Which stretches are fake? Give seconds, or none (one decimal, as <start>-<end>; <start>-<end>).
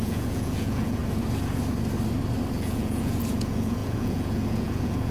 0.0-1.0; 2.5-5.1